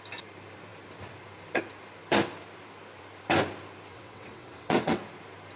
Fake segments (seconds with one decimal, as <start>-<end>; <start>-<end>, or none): 3.9-5.0